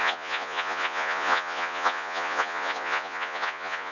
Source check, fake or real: fake